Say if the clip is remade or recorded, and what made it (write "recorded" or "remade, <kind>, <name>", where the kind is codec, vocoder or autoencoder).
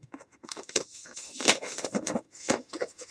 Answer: remade, autoencoder, DAC-VAE